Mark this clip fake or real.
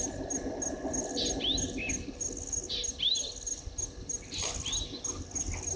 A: real